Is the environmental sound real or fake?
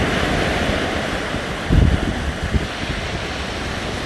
real